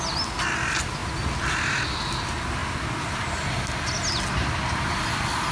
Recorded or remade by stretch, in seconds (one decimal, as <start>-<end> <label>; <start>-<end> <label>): 0.0-5.5 recorded